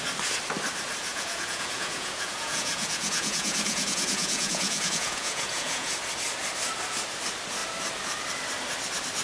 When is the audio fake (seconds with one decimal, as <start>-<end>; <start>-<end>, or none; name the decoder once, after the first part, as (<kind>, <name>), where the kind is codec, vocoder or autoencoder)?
1.1-5.9 (vocoder, Vocos)